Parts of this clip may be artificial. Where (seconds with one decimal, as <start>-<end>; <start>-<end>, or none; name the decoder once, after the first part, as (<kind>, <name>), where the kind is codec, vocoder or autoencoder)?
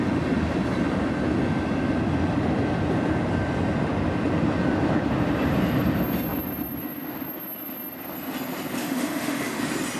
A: 8.8-9.6 (autoencoder, DAC-VAE)